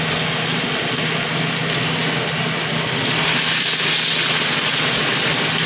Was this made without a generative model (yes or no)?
yes